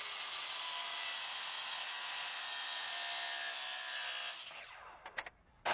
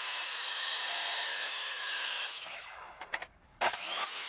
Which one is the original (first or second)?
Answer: first